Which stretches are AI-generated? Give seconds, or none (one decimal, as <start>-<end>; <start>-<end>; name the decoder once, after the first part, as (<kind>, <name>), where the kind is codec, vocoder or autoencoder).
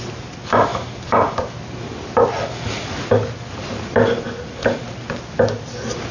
0.7-1.5 (vocoder, BigVGAN v2)